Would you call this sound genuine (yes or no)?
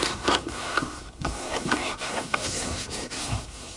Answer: no